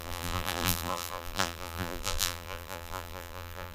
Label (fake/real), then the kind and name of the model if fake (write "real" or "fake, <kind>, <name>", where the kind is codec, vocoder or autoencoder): fake, vocoder, BigVGAN v2